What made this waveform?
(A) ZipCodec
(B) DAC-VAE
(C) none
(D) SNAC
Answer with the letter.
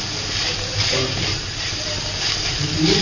C